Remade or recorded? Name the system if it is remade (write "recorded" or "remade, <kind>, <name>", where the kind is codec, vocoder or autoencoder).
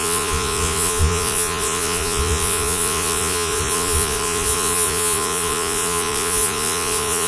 remade, vocoder, Vocos